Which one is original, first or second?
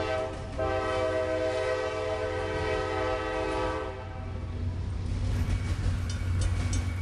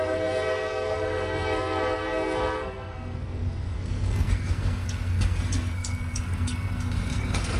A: first